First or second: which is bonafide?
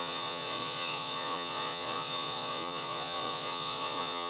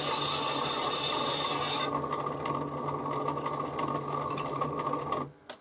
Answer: second